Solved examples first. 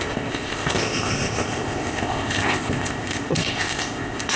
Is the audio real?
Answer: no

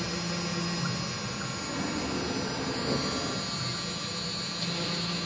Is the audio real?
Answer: yes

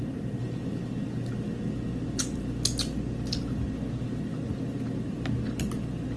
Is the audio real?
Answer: yes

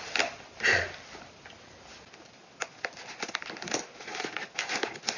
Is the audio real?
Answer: yes